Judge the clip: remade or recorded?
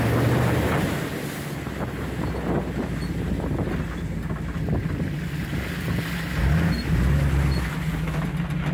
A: recorded